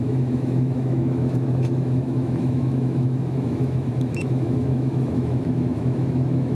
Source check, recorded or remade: remade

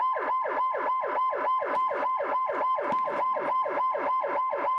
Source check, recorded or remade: recorded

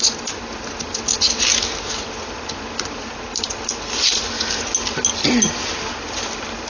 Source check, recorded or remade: recorded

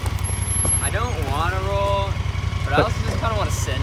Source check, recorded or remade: recorded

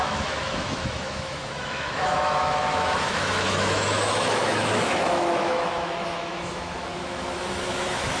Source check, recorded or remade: remade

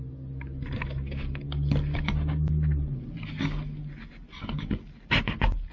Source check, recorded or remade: recorded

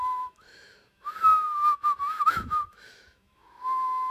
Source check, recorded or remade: remade